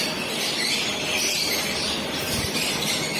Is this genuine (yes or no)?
no